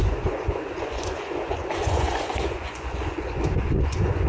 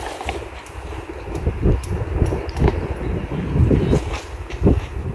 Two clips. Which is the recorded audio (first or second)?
second